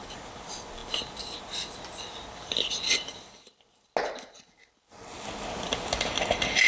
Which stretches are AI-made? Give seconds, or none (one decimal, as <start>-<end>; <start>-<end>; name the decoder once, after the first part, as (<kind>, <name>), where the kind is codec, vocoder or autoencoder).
none